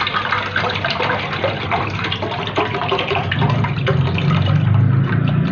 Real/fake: real